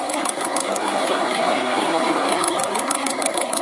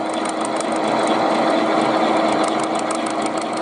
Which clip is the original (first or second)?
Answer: second